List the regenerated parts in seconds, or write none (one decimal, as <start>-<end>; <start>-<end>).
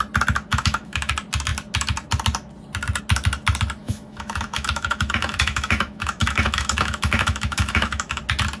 0.5-1.1; 3.8-8.2